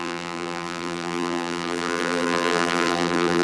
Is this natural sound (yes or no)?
no